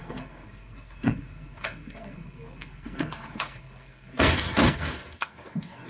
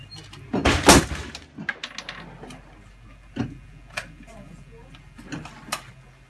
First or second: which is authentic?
second